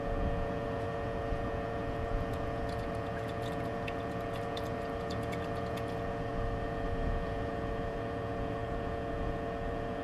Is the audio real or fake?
fake